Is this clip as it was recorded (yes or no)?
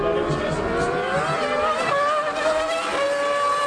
yes